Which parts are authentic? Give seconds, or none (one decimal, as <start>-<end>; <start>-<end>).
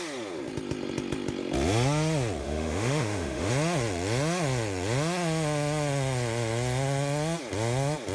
0.0-2.4; 3.5-8.1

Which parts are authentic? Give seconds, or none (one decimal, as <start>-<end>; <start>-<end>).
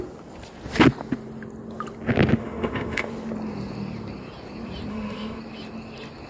0.0-2.4; 3.1-4.9; 5.4-6.3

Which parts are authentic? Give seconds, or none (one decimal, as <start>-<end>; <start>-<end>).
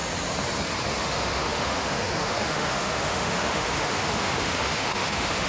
0.0-1.0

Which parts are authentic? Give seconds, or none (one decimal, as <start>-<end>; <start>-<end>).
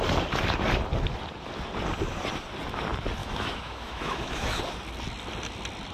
0.0-3.2; 4.6-5.9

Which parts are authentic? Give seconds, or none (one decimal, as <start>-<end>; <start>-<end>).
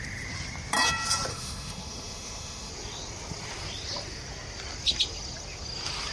0.0-1.3; 2.7-6.1